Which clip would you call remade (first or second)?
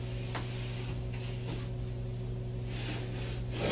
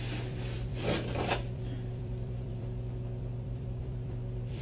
second